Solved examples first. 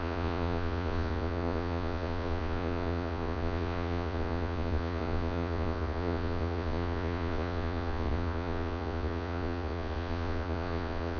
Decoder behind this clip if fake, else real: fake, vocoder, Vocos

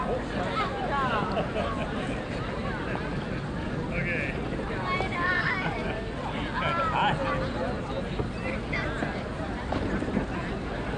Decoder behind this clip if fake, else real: real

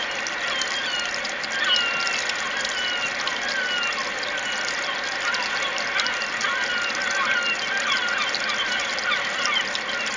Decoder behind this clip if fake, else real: real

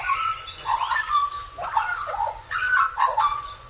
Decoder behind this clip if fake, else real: fake, vocoder, Vocos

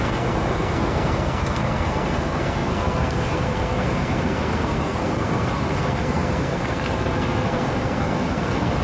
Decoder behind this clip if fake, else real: fake, codec, SNAC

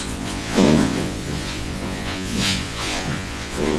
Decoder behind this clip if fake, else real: fake, vocoder, Vocos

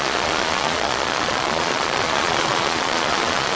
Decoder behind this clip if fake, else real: fake, vocoder, Vocos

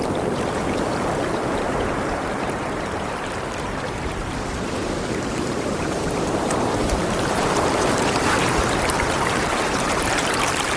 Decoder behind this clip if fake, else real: fake, vocoder, BigVGAN v2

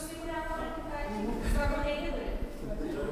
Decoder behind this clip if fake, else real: real